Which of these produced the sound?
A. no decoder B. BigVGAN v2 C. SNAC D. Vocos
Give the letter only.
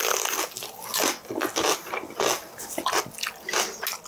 A